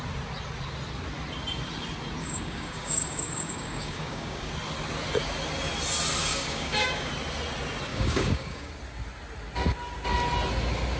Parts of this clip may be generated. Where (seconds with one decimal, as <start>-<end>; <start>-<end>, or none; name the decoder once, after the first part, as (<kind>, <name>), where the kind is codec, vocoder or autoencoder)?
2.2-4.5 (codec, DAC); 6.2-7.1; 7.9-8.7